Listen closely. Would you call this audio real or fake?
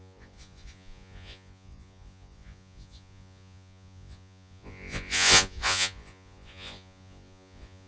fake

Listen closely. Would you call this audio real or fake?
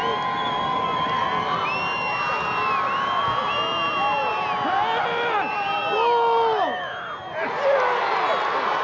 real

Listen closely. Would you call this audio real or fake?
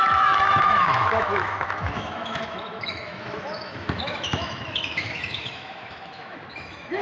fake